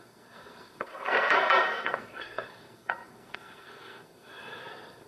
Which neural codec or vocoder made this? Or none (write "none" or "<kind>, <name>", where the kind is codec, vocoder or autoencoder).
codec, SNAC